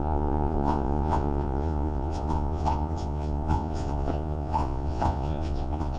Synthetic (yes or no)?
yes